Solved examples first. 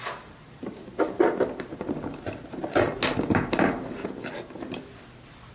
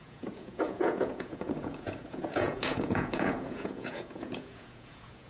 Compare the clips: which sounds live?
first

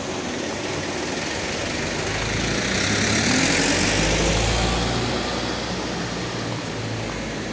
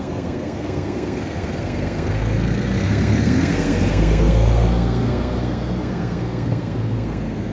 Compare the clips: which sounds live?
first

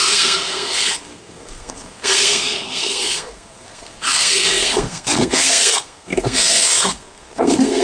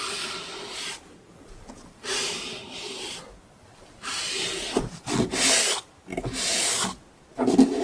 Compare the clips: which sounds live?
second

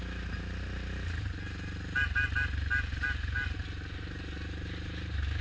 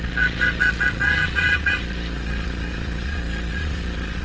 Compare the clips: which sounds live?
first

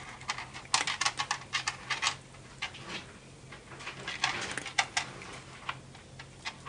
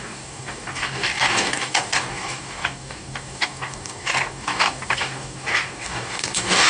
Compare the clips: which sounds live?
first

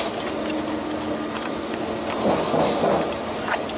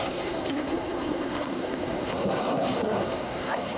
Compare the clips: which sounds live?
first